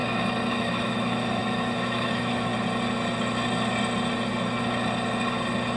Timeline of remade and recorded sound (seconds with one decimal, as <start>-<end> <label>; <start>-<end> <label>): 0.0-0.5 recorded; 0.5-2.5 remade; 2.5-5.8 recorded